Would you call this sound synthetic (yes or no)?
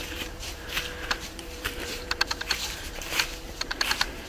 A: yes